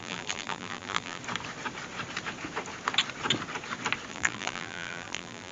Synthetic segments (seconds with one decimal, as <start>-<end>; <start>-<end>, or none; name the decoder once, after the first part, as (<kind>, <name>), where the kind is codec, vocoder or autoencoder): 0.0-1.2 (vocoder, BigVGAN v2); 4.1-5.5